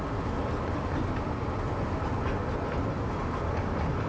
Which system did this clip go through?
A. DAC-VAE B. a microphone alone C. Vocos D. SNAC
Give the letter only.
B